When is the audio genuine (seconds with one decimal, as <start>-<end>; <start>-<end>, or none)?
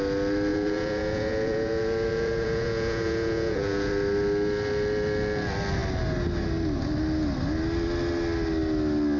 0.0-0.5; 3.9-9.2